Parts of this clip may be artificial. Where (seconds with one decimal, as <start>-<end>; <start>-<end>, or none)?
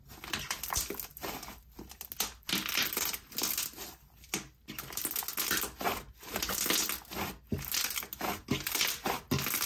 none